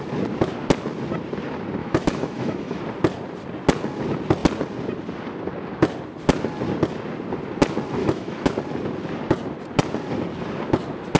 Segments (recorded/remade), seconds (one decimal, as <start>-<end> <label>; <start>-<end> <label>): 0.0-1.8 recorded; 1.8-2.8 remade; 2.8-8.0 recorded; 8.0-8.5 remade; 8.5-11.2 recorded